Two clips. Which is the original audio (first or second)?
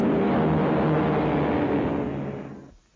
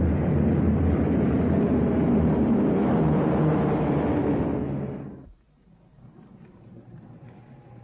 first